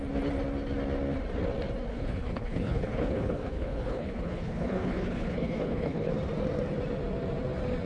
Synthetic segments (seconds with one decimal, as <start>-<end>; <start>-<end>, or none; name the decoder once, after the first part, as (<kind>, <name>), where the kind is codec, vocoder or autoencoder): 1.9-6.1 (codec, HILCodec)